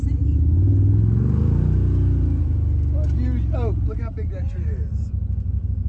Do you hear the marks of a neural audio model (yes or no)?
no